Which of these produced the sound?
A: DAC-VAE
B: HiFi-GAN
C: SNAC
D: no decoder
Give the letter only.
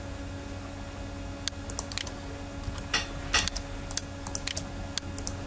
D